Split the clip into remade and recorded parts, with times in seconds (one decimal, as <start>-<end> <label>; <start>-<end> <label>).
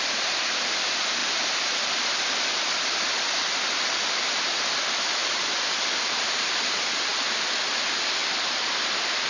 0.0-1.2 recorded; 1.2-3.2 remade; 3.2-5.2 recorded; 5.2-6.0 remade; 6.0-8.2 recorded; 8.2-8.7 remade; 8.7-9.3 recorded